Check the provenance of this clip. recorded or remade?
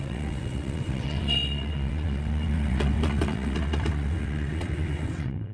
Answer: remade